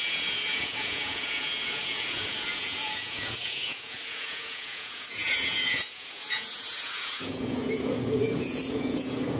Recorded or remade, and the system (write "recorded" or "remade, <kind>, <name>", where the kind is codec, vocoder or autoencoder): remade, vocoder, Vocos